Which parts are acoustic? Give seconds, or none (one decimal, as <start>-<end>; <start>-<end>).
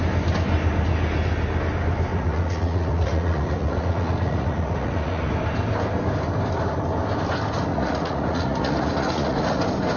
0.0-2.1; 5.3-7.7; 9.6-10.0